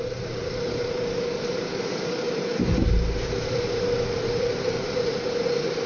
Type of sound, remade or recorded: remade